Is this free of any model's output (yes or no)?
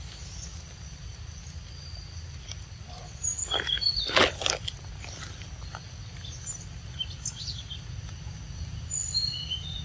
yes